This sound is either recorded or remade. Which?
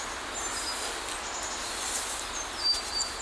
recorded